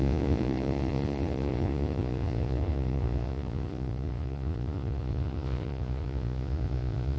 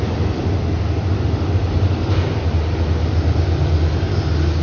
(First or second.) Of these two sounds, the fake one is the first